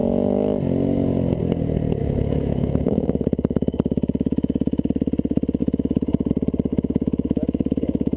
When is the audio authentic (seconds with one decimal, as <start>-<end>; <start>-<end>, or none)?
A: 0.0-2.0; 4.9-5.6; 6.3-6.7